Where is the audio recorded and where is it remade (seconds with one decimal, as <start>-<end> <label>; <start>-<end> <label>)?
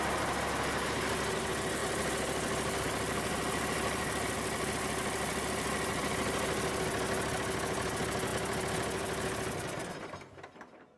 0.0-11.0 recorded